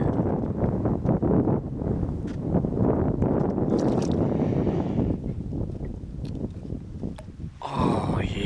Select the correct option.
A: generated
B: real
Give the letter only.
B